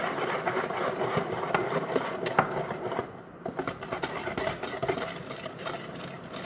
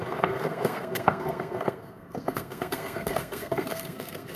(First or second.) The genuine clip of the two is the first